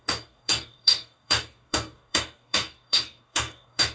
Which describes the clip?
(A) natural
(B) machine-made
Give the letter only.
B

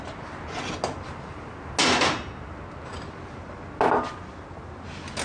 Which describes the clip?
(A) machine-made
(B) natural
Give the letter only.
B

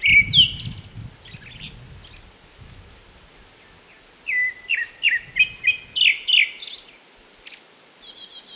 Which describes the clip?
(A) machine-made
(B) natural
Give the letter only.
B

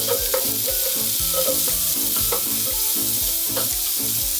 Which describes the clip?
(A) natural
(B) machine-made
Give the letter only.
A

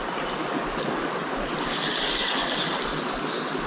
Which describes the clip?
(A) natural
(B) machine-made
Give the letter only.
A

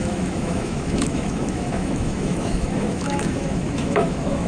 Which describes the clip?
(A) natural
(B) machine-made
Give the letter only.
B